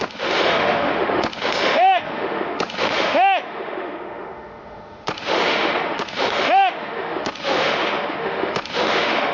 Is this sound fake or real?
fake